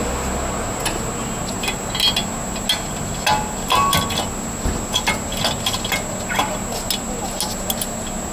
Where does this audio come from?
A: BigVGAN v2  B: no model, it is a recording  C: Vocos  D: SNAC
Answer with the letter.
B